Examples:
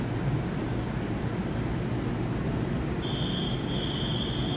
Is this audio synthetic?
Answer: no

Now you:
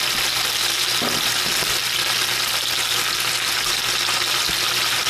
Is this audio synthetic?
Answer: no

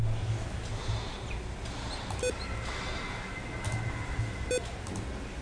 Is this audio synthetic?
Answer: no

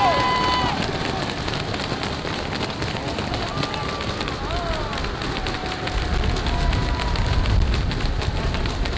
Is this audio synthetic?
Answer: no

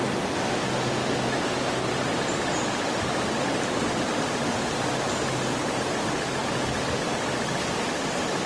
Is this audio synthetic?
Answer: no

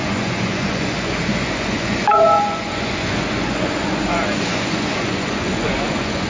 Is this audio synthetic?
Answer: yes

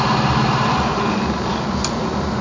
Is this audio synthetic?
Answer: no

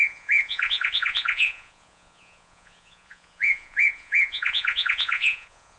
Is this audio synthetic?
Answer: yes